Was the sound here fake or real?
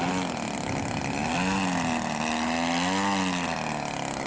real